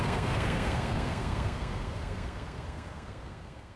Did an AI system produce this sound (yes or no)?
yes